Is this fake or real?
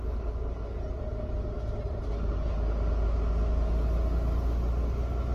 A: real